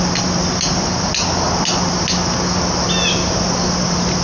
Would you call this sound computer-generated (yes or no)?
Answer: no